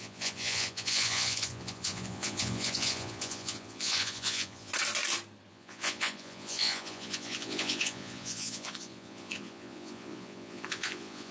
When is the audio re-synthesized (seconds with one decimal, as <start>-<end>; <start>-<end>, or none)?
0.0-4.7; 5.5-11.3

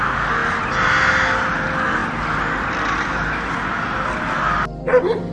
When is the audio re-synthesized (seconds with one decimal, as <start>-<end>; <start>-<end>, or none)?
none

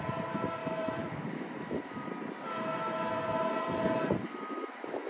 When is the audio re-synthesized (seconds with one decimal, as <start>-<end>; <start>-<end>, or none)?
0.6-2.1; 4.2-5.1

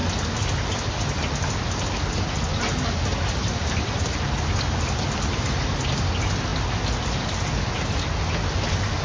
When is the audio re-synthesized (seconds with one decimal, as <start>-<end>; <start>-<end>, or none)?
3.1-4.6

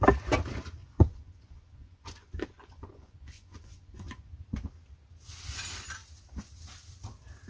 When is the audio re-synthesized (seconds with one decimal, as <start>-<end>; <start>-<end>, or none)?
0.8-4.3

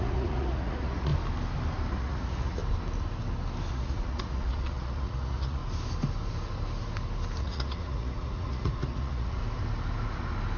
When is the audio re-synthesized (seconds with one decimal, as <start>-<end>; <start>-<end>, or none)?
0.0-1.1; 1.9-2.6; 3.7-5.6; 7.4-9.4

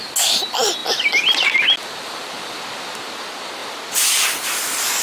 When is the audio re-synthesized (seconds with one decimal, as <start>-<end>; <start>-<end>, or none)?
none